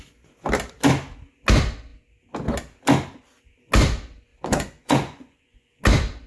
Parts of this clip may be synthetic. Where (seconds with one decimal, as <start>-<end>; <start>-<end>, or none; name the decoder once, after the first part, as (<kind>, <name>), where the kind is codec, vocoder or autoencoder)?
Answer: 4.3-5.7 (vocoder, Vocos)